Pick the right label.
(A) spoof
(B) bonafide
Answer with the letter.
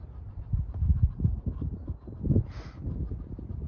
B